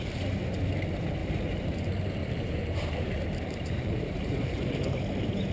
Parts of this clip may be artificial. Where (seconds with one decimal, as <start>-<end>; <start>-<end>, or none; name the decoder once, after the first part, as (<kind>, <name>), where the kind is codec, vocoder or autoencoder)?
1.2-1.8 (vocoder, BigVGAN v2); 2.2-4.7